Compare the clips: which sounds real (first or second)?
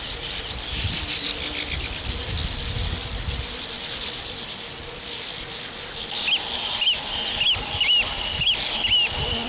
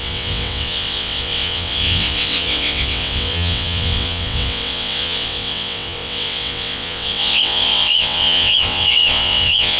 first